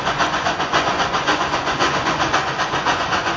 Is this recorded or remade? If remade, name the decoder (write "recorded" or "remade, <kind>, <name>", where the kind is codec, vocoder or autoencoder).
remade, vocoder, Vocos